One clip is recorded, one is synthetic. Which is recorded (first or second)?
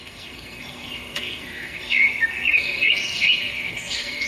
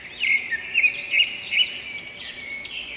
second